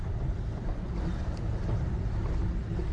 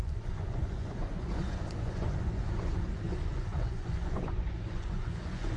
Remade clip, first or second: second